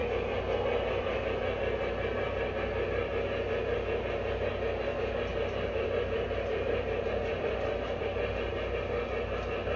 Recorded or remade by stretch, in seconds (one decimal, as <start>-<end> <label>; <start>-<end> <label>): 0.0-5.3 recorded; 5.3-8.3 remade; 8.3-9.8 recorded